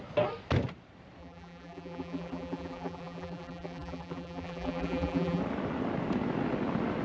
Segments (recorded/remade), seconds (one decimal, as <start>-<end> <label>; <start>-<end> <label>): 0.0-1.2 recorded; 1.2-5.4 remade; 5.4-7.0 recorded